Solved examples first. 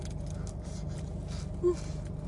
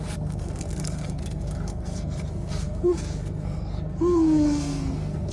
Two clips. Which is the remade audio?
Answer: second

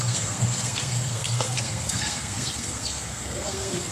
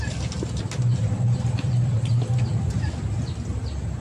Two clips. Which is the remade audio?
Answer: first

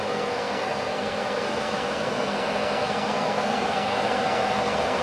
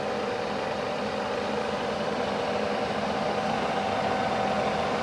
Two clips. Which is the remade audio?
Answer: first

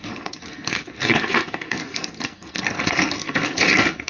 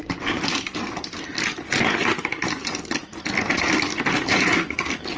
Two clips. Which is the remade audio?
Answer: first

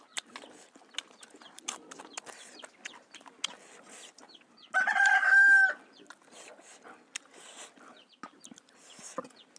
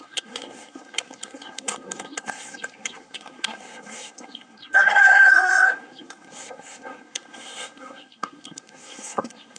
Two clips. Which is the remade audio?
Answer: second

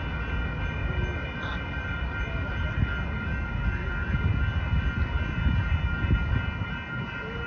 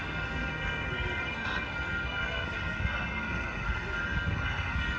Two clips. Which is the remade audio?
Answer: second